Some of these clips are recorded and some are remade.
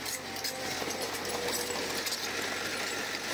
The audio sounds recorded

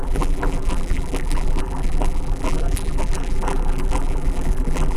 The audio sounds remade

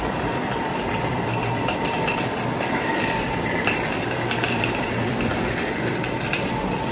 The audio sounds remade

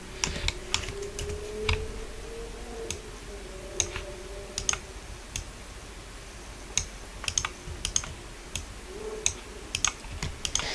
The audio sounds recorded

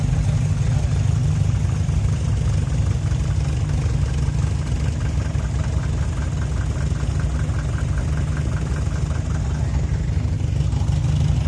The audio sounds recorded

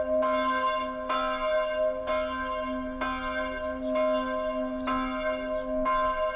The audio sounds recorded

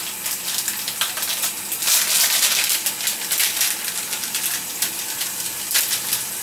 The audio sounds recorded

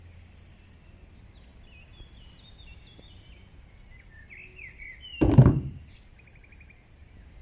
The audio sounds recorded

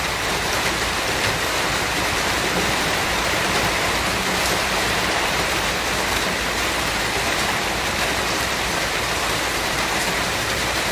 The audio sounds remade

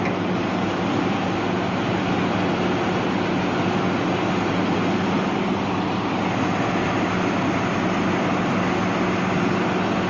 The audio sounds recorded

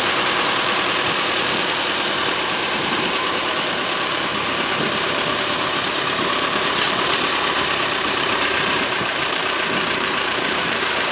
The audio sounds remade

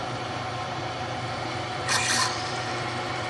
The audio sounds remade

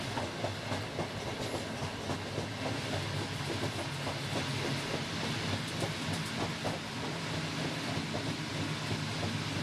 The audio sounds recorded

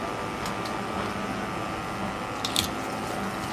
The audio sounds recorded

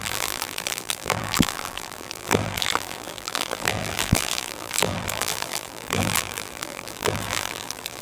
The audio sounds remade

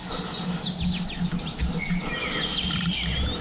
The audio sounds recorded